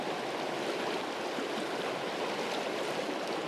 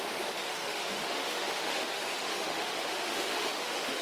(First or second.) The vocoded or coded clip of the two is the second